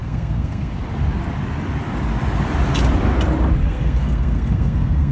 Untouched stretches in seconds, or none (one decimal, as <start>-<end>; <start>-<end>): 0.7-3.6